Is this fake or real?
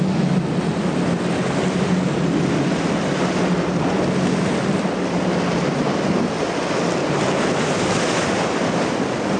real